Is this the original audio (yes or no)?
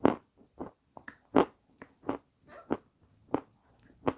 yes